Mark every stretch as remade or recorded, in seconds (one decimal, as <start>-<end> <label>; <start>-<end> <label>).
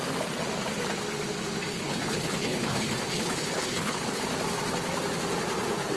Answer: 0.0-1.7 recorded; 1.7-4.2 remade; 4.2-6.0 recorded